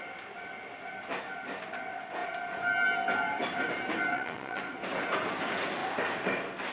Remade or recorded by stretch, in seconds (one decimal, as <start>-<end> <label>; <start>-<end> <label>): 0.0-4.1 recorded; 4.1-4.6 remade; 4.6-6.7 recorded